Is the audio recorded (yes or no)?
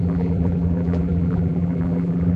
no